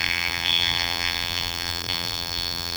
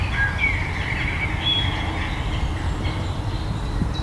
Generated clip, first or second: first